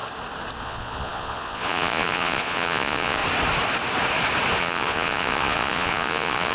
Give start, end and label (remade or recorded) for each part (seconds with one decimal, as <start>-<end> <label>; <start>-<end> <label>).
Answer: 0.0-0.6 recorded; 0.6-3.2 remade; 3.2-4.6 recorded; 4.6-6.5 remade